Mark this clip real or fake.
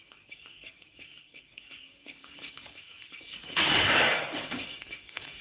fake